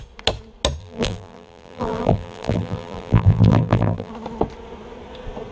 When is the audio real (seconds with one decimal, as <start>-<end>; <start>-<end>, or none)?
0.0-0.8; 4.1-5.5